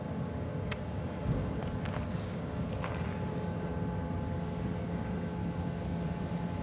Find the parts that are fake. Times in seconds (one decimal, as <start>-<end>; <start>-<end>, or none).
0.0-1.6; 2.1-3.7; 4.9-5.4